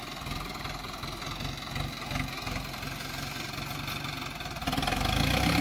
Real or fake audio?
real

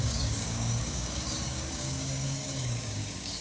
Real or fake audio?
fake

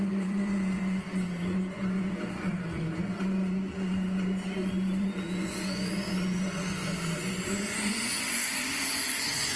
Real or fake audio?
fake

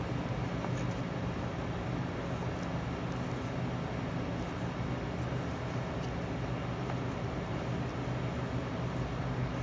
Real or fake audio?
real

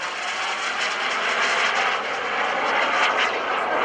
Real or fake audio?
real